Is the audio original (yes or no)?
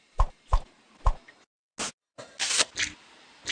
yes